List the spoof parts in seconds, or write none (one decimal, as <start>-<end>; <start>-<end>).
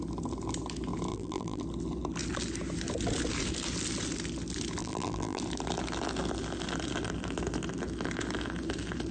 1.1-1.6; 4.8-5.4